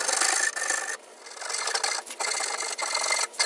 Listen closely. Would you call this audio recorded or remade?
recorded